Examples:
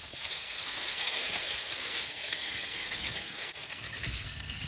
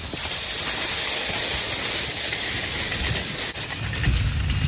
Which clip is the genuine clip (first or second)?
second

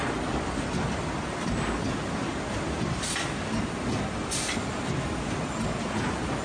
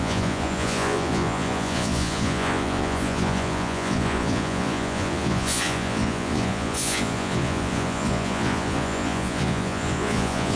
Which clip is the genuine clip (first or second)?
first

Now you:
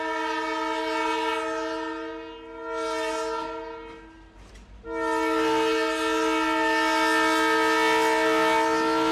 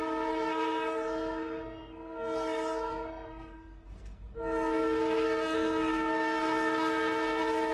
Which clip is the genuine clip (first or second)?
first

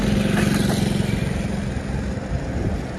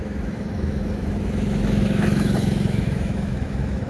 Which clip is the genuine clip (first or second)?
first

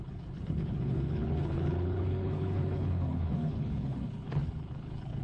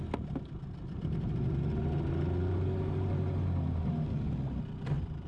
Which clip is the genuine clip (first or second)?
second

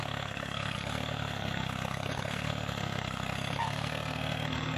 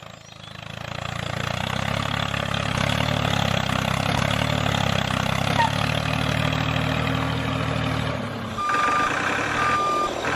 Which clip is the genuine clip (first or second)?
second